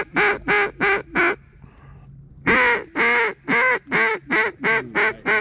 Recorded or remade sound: recorded